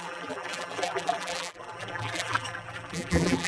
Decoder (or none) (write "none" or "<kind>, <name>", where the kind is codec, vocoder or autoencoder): vocoder, BigVGAN v2